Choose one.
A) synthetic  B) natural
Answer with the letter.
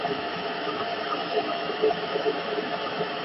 A